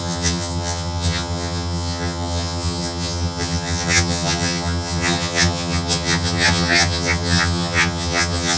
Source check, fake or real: fake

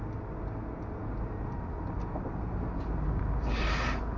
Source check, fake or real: real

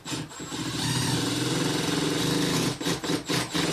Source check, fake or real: real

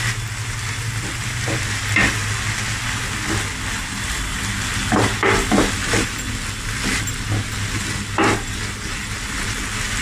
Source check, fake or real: real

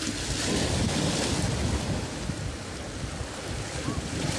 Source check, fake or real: real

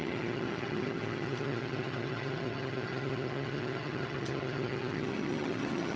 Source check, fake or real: fake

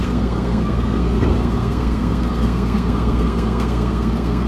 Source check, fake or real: fake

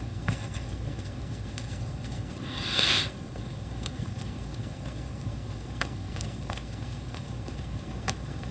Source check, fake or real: fake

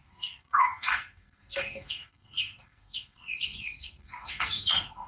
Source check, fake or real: fake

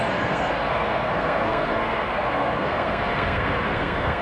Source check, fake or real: fake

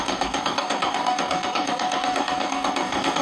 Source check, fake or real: fake